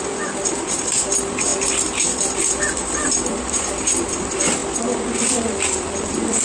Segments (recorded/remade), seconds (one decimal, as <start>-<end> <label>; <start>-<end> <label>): 0.0-1.5 remade; 1.5-2.5 recorded; 2.5-4.6 remade; 4.6-5.5 recorded; 5.5-6.4 remade